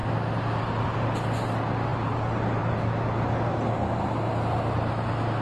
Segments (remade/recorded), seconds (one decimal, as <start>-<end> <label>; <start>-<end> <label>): 0.0-5.4 recorded